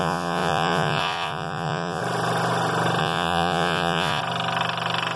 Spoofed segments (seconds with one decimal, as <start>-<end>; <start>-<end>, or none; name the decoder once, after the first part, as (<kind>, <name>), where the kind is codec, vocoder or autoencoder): 0.0-2.0 (vocoder, Vocos); 3.0-4.2